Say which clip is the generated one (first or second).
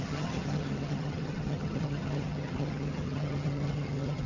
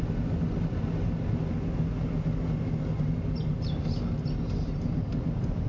first